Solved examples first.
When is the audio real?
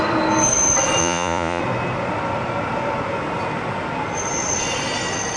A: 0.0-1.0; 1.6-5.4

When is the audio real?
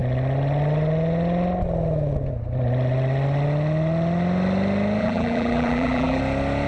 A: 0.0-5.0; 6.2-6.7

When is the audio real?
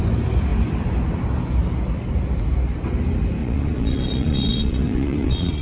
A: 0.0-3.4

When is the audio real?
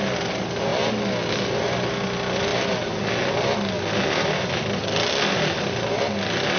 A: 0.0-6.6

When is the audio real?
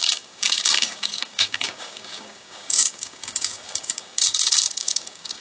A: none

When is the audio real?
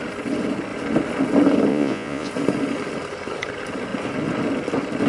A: 0.0-1.7; 2.3-5.1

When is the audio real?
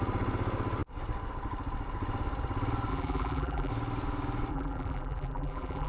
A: 0.0-2.9; 3.7-4.5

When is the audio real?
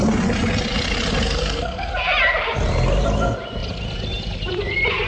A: 0.0-1.4; 1.9-5.1